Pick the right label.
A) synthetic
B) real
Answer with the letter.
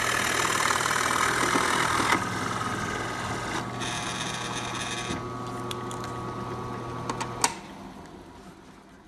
B